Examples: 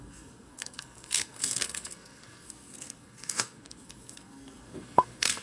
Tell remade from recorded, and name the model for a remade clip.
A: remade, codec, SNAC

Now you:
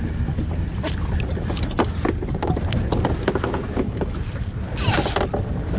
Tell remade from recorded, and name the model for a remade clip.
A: recorded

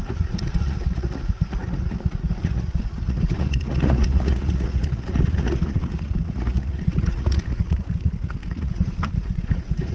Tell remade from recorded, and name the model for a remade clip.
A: remade, vocoder, Vocos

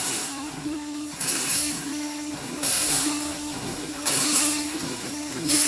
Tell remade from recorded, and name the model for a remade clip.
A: remade, codec, SNAC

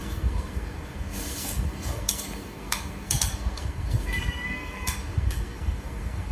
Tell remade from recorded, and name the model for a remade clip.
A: remade, codec, SNAC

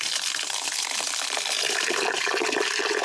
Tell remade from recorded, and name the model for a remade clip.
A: recorded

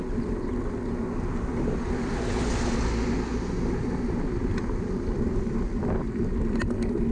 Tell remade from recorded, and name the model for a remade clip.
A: recorded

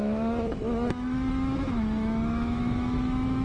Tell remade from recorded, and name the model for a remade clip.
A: remade, autoencoder, DAC-VAE